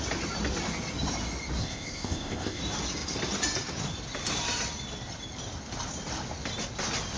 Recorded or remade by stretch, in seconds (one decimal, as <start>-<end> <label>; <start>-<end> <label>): 0.0-1.6 recorded; 1.6-2.6 remade; 2.6-7.2 recorded

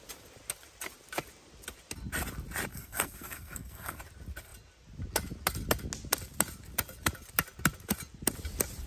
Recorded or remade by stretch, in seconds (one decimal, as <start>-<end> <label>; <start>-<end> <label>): 0.0-2.7 recorded; 2.7-4.0 remade; 4.0-8.9 recorded

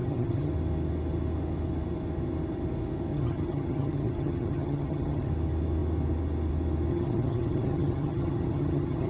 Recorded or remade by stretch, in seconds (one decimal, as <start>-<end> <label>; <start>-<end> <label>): 0.0-0.5 remade; 0.5-3.1 recorded; 3.1-5.3 remade; 5.3-6.9 recorded; 6.9-9.1 remade

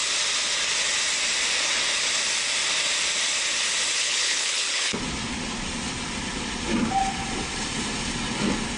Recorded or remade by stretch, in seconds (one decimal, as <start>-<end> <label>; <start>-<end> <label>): 0.0-4.0 recorded; 4.0-5.0 remade; 5.0-8.8 recorded

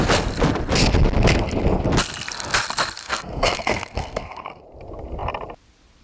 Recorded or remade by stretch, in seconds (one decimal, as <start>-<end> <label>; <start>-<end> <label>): 0.0-3.0 recorded; 3.0-4.6 remade; 4.6-6.0 recorded

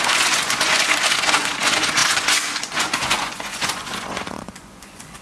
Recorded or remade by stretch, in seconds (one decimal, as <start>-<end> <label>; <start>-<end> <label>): 0.0-5.2 remade